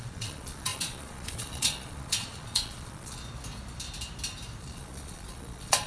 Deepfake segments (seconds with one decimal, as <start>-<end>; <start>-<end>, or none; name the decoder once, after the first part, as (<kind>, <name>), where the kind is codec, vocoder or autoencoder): 0.0-3.2 (vocoder, Vocos); 4.6-5.9

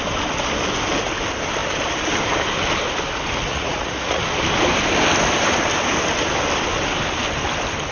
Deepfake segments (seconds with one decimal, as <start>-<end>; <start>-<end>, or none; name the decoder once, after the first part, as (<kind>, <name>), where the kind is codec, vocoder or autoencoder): 3.5-4.2 (vocoder, Vocos)